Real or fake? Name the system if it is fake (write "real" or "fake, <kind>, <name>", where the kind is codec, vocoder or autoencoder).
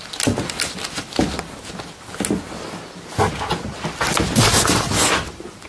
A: real